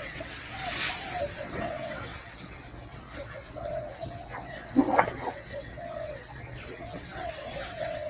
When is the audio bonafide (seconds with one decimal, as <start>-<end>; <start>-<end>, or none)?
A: 0.8-1.4